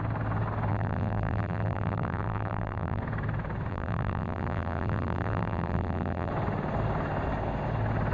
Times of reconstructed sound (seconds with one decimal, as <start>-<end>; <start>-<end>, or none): 0.7-3.0; 3.7-6.3